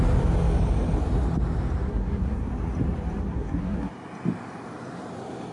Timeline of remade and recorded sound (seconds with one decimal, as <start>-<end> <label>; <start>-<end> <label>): 0.0-1.9 recorded; 1.9-2.5 remade; 2.5-3.3 recorded; 3.3-3.9 remade; 3.9-5.5 recorded